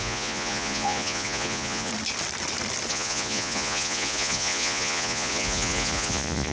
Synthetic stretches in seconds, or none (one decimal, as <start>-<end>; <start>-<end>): 0.0-1.9; 2.9-6.5